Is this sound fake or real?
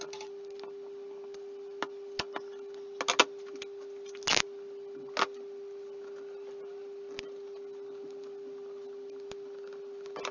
real